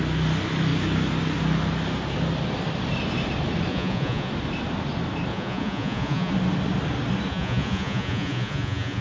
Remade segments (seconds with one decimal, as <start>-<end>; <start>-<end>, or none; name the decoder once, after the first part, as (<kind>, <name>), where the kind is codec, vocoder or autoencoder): 3.7-4.3 (vocoder, Vocos); 5.3-6.3; 7.3-9.0